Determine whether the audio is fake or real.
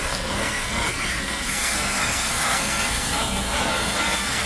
fake